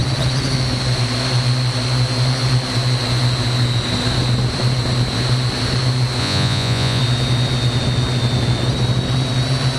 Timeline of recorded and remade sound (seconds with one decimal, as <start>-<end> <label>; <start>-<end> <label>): 0.0-6.2 recorded; 6.2-7.0 remade; 7.0-9.8 recorded